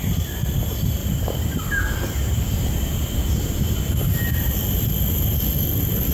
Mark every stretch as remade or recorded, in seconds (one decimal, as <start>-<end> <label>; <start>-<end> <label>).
0.0-1.0 recorded; 1.0-3.8 remade; 3.8-6.1 recorded